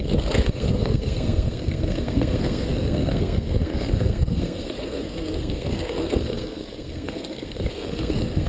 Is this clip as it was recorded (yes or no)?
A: no